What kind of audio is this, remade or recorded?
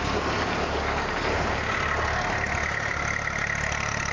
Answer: recorded